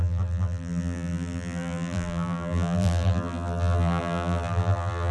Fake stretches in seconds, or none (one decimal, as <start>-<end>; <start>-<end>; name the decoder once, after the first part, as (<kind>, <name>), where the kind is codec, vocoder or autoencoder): 0.0-5.1 (vocoder, BigVGAN v2)